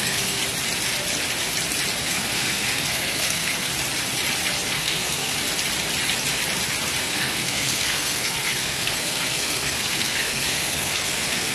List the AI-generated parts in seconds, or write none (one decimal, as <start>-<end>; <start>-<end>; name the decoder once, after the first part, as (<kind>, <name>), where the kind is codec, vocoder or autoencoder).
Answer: 0.0-0.4 (codec, SNAC); 2.0-3.7; 4.7-5.3; 7.0-11.5